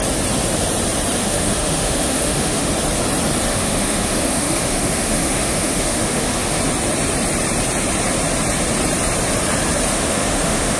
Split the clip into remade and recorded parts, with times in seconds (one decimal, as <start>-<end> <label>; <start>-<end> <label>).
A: 0.0-1.2 recorded; 1.2-2.7 remade; 2.7-3.5 recorded; 3.5-6.6 remade; 6.6-9.9 recorded; 9.9-10.8 remade